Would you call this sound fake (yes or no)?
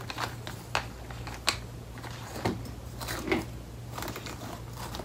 no